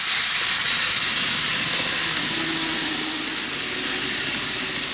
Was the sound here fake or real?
real